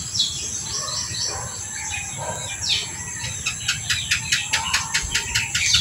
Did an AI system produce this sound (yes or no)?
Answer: no